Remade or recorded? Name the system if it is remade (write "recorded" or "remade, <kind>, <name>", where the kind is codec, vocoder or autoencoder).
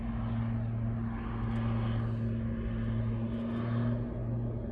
recorded